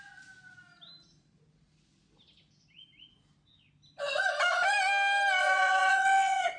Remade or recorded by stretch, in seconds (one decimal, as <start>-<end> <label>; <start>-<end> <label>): 0.0-5.4 recorded; 5.4-6.6 remade